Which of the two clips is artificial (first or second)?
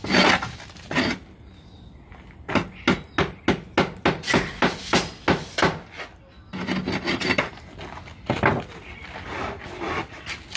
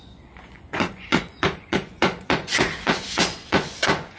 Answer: second